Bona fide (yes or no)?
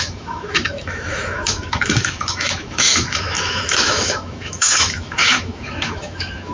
no